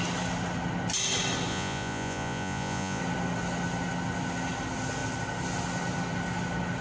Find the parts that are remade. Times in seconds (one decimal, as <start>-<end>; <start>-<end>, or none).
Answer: 1.5-3.0